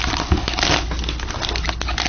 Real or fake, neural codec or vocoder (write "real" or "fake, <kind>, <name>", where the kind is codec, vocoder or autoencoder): real